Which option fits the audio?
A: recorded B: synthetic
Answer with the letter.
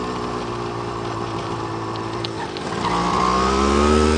A